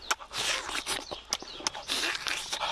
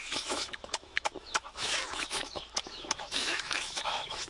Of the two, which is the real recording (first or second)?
first